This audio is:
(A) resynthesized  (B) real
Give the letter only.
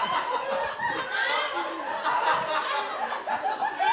B